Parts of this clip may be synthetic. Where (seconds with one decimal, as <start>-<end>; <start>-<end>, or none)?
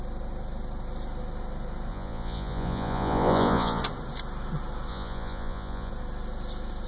1.9-3.8; 4.9-5.9